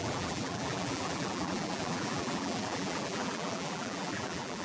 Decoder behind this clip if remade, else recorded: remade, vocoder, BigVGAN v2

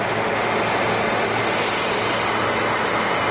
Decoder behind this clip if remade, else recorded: recorded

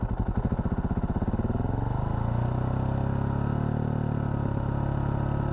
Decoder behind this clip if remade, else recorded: recorded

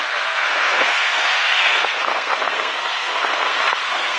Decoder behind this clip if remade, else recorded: remade, codec, SNAC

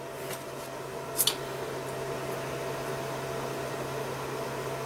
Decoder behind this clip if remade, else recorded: recorded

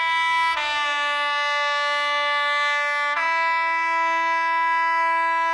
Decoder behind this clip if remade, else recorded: recorded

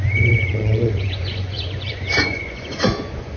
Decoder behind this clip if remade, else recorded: remade, vocoder, Vocos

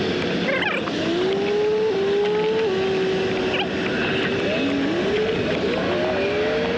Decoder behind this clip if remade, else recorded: recorded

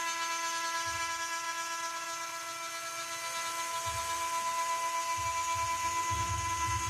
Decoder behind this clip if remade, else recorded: recorded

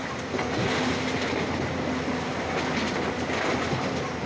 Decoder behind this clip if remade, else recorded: recorded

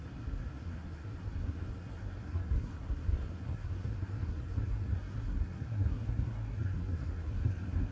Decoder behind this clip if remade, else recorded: remade, codec, SNAC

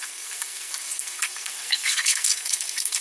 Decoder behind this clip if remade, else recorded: remade, codec, SNAC